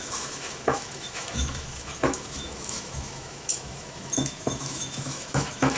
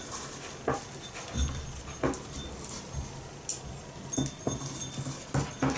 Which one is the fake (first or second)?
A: first